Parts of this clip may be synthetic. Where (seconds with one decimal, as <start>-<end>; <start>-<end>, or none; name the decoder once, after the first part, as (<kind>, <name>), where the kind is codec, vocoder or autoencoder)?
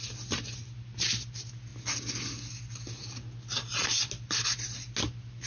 none